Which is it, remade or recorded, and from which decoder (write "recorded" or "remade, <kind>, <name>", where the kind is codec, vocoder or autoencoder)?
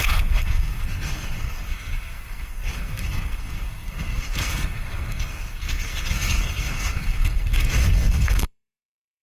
remade, codec, SNAC